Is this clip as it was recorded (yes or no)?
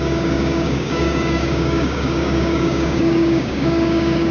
no